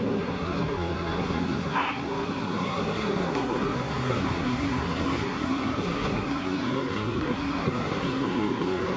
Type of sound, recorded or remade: remade